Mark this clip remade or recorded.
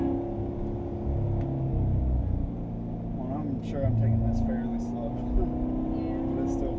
recorded